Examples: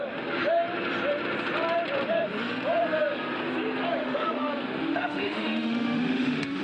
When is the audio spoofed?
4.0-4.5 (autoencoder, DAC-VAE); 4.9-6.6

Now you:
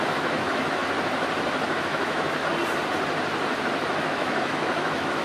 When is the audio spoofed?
0.0-0.8 (autoencoder, DAC-VAE); 1.7-2.4; 4.0-5.2

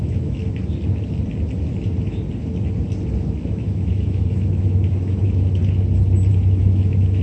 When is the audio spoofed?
0.0-0.4 (autoencoder, DAC-VAE); 3.5-5.6; 6.3-7.2

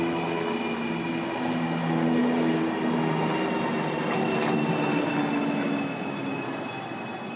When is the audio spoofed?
none